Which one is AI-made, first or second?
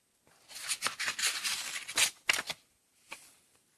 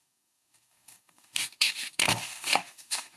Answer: second